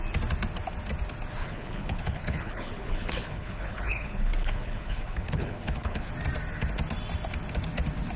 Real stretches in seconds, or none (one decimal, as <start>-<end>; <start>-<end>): 0.0-1.4; 6.1-8.2